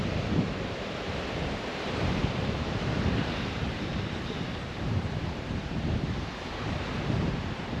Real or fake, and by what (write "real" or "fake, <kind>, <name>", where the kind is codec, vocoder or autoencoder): fake, vocoder, BigVGAN v2